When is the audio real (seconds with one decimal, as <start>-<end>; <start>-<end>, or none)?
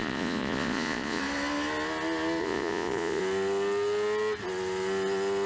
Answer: 1.2-2.4; 3.2-5.5